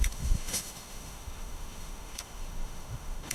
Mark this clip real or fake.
fake